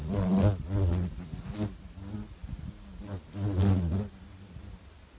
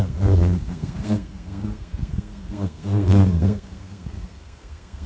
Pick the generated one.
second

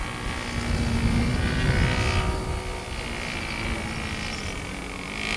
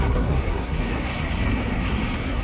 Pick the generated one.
second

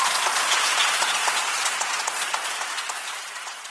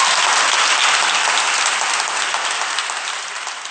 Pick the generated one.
first